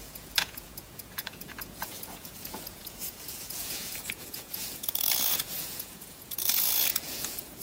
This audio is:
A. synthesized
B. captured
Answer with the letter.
A